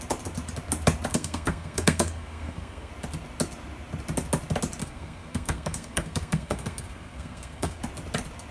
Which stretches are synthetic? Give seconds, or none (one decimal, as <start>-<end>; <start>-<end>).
1.1-2.9; 4.8-7.8